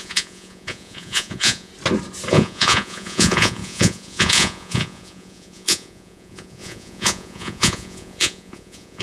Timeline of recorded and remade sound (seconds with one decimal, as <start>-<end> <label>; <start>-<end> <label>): 0.0-1.7 remade; 1.7-2.3 recorded; 2.3-9.0 remade